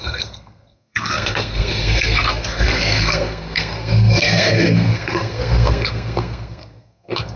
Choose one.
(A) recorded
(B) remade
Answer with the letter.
B